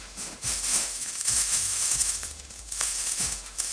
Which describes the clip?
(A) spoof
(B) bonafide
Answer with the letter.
A